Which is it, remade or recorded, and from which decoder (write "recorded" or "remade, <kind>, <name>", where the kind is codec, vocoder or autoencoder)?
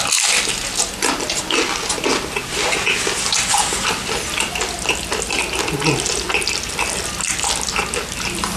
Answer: recorded